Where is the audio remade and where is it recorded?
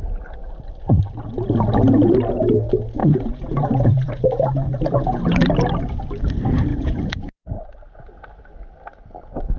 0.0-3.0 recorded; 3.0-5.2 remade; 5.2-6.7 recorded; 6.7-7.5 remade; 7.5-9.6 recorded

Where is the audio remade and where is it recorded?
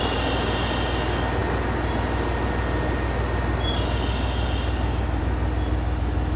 0.0-6.4 recorded